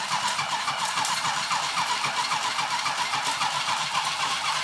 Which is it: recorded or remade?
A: remade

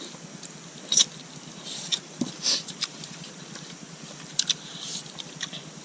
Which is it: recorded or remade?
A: remade